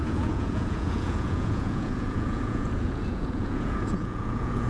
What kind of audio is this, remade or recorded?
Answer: remade